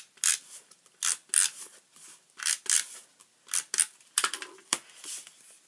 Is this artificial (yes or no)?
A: no